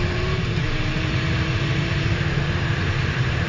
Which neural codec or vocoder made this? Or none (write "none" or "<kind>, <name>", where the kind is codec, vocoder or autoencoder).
vocoder, BigVGAN v2